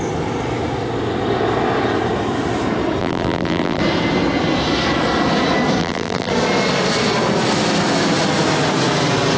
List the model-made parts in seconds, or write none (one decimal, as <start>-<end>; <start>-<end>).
3.0-3.8; 5.8-6.3